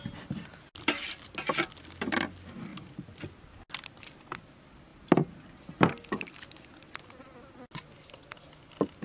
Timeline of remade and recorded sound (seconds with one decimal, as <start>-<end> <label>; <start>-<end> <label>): 0.0-9.0 recorded